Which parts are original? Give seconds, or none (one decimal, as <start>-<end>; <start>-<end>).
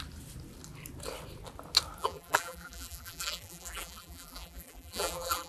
0.0-2.0